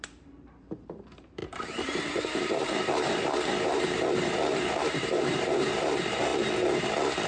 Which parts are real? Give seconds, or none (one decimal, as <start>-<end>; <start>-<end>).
6.3-7.3